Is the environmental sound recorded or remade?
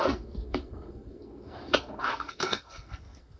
remade